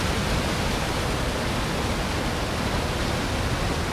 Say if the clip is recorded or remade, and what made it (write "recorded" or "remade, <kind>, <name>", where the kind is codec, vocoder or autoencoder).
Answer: recorded